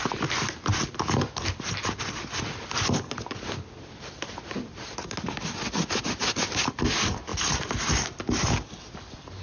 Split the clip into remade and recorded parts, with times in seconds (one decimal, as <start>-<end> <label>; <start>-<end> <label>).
0.0-0.7 remade; 0.7-5.3 recorded; 5.3-6.2 remade; 6.2-6.8 recorded; 6.8-9.4 remade